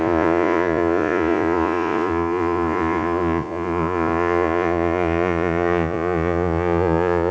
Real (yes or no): no